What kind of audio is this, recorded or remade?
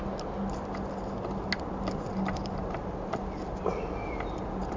recorded